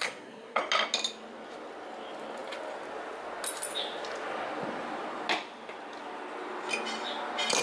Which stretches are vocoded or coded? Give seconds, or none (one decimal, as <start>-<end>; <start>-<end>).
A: 0.0-0.6